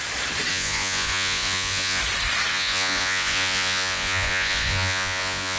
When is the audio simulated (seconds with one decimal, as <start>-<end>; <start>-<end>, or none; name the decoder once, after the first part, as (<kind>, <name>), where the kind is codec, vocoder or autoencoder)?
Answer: 0.5-2.0 (vocoder, Vocos); 2.5-5.6